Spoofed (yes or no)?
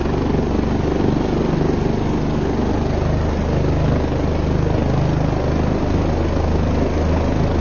no